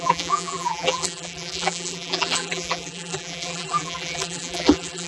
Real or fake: fake